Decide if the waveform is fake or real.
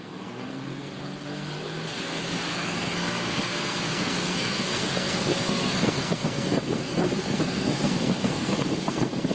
fake